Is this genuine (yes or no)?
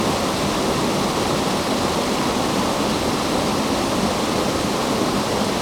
yes